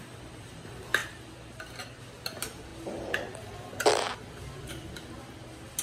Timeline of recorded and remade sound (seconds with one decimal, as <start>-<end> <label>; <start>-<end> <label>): 0.0-5.8 recorded